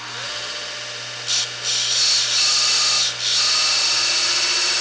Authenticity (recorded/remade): recorded